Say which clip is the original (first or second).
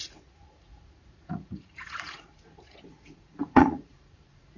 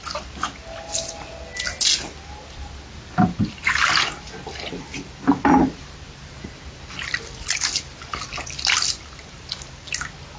second